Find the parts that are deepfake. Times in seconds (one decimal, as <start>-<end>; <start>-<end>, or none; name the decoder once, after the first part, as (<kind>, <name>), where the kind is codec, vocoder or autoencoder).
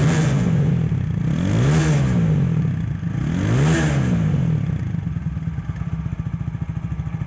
0.0-0.7 (vocoder, Vocos)